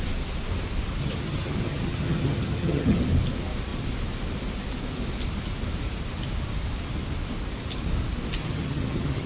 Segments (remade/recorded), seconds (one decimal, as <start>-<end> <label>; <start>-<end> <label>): 0.0-1.0 recorded; 1.0-3.0 remade; 3.0-8.4 recorded; 8.4-9.3 remade